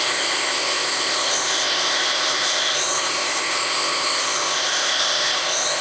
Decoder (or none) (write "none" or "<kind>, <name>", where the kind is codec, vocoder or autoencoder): codec, ZipCodec